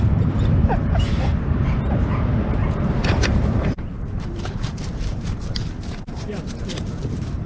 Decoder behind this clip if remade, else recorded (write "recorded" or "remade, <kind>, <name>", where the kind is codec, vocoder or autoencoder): remade, vocoder, BigVGAN v2